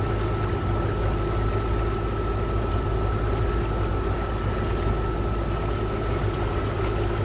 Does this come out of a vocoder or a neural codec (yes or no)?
no